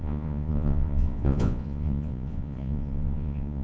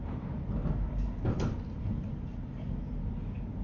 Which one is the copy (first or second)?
first